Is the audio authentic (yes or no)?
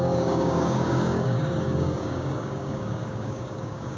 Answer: no